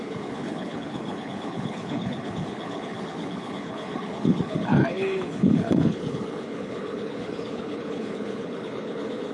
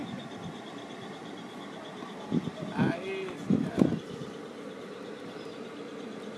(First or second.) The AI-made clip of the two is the first